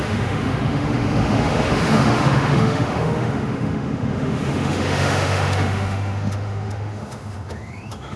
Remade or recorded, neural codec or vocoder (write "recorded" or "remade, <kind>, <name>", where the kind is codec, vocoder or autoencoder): remade, autoencoder, DAC-VAE